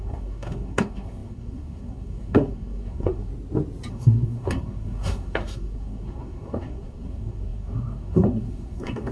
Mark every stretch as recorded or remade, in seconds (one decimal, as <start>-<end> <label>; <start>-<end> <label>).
0.0-3.3 remade; 3.3-3.9 recorded; 3.9-9.1 remade